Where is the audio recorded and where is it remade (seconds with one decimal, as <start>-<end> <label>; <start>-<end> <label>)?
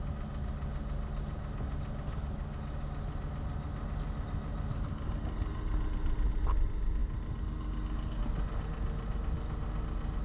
0.0-10.2 recorded